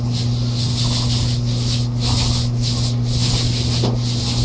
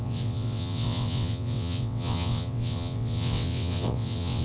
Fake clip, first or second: second